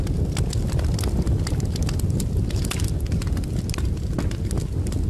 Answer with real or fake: real